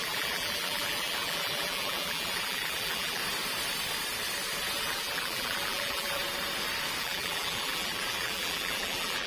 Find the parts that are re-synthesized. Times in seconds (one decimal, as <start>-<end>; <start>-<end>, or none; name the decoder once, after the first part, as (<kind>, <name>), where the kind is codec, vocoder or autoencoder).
0.0-3.2 (vocoder, BigVGAN v2); 4.8-6.2; 7.0-9.3